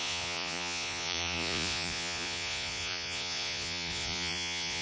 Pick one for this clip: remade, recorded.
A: remade